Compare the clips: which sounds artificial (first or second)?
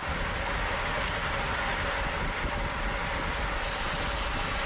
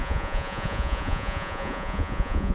second